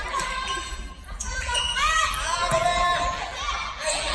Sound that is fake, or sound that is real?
fake